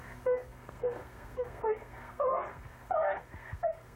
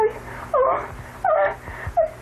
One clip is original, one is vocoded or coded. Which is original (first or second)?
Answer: second